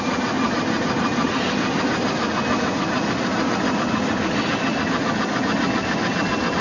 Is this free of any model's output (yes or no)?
yes